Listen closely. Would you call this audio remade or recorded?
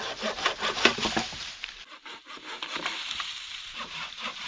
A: remade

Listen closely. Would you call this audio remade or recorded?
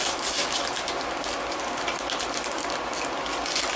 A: recorded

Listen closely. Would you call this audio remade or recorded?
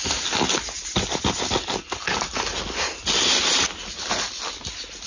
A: recorded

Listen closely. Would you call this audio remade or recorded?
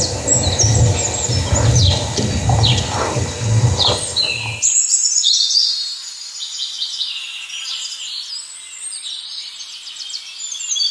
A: recorded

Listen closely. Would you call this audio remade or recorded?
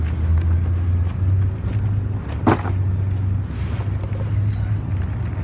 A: recorded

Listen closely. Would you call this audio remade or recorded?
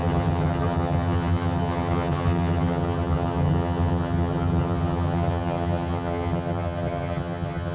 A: remade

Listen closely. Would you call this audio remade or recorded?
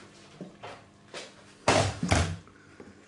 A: remade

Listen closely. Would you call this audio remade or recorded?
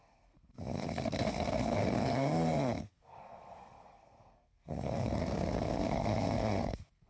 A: remade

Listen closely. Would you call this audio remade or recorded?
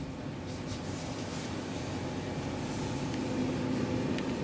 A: recorded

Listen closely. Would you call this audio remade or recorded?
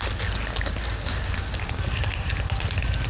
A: recorded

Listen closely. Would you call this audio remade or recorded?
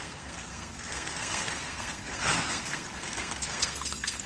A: remade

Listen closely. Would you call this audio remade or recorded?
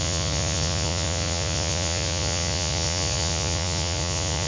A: remade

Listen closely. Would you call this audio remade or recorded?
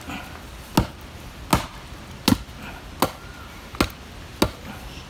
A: recorded